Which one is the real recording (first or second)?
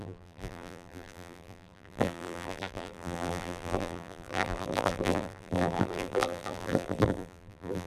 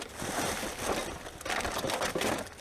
second